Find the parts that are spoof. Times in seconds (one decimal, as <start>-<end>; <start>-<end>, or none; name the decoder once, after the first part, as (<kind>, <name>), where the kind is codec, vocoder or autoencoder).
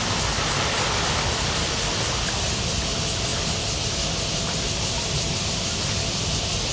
none